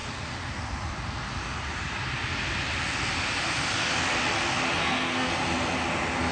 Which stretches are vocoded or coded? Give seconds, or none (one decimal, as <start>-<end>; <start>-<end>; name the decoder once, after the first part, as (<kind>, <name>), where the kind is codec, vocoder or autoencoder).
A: 4.8-5.3 (codec, SNAC)